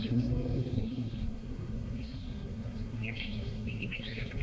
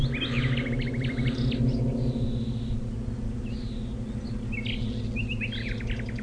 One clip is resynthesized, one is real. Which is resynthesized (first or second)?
first